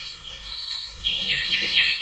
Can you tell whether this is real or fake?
fake